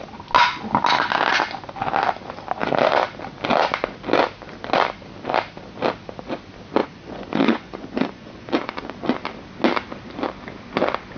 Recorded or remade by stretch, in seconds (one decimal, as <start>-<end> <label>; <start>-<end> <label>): 0.0-6.8 recorded; 6.8-8.8 remade; 8.8-11.2 recorded